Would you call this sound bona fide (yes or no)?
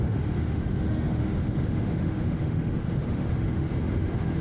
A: no